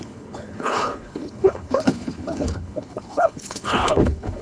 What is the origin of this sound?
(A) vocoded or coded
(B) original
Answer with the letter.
A